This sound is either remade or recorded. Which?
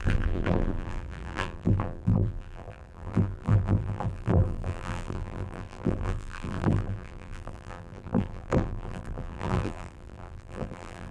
remade